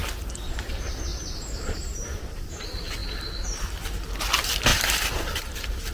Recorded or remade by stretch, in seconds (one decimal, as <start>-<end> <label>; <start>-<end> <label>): 0.0-0.7 remade; 0.7-1.1 recorded; 1.1-2.2 remade; 2.2-4.7 recorded; 4.7-5.9 remade